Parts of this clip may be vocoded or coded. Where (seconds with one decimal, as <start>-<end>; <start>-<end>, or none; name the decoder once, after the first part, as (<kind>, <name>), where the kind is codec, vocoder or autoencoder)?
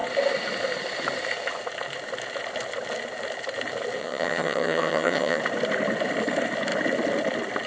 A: 4.0-5.4 (vocoder, HiFi-GAN)